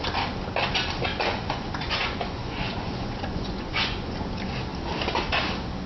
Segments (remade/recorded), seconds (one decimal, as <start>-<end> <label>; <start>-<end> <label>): 0.0-1.1 recorded; 1.1-4.3 remade; 4.3-5.9 recorded